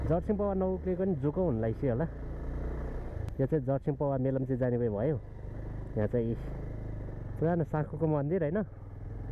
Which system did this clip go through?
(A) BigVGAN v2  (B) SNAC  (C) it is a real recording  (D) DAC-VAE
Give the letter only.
C